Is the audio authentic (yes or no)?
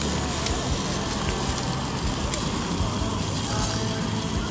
yes